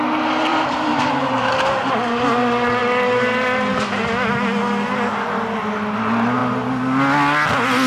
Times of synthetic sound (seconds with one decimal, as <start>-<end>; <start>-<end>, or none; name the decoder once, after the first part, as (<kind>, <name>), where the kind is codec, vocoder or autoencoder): 0.5-1.9 (vocoder, BigVGAN v2)